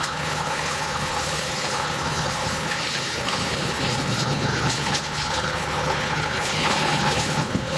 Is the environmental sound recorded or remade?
remade